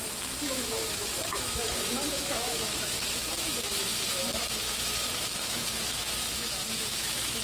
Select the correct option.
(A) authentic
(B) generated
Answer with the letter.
B